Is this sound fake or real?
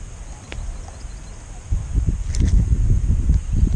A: fake